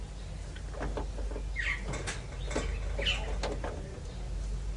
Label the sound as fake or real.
real